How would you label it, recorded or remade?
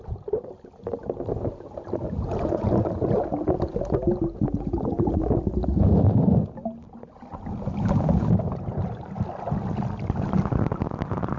recorded